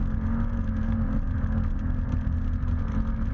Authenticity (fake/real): real